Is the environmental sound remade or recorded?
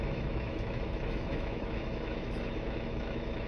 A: remade